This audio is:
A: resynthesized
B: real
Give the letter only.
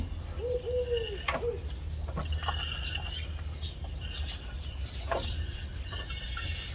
B